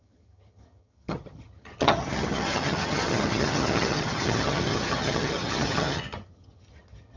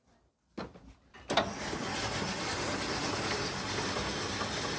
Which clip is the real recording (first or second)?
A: second